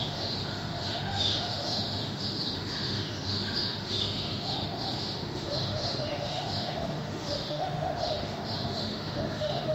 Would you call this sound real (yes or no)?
no